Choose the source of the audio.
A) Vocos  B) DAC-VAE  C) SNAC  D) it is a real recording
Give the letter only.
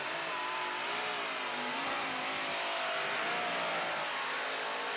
D